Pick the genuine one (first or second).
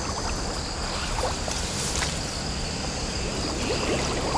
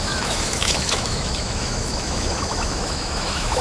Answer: first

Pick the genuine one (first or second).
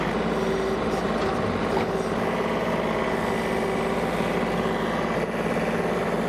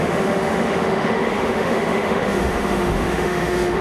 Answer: first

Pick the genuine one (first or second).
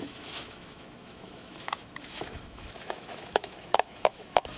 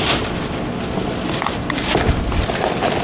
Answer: second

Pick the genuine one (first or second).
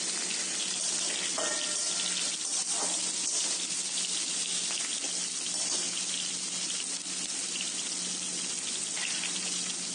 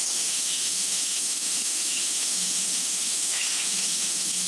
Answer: first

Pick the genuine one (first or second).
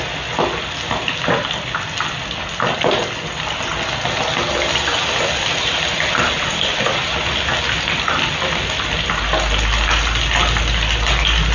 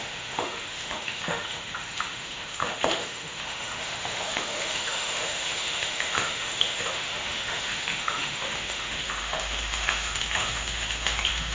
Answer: first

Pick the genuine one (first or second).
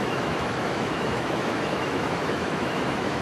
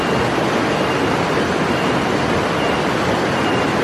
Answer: second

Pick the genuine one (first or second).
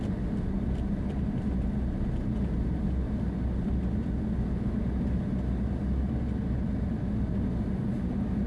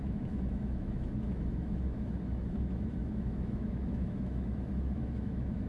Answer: first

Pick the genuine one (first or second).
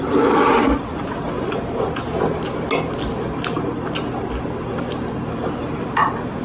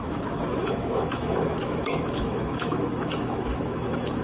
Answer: first